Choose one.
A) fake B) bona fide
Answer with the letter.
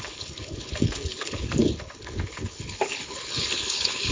A